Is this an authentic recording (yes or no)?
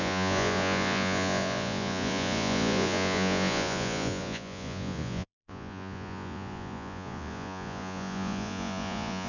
no